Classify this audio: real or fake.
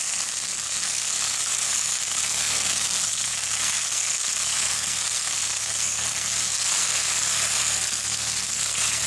fake